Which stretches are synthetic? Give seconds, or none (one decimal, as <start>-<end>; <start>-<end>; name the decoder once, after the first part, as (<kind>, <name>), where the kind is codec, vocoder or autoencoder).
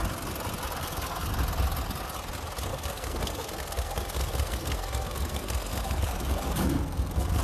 0.8-1.3 (codec, SNAC); 2.7-7.4